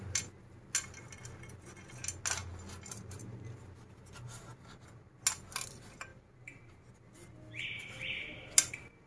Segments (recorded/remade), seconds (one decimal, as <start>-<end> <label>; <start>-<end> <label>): 0.0-9.1 recorded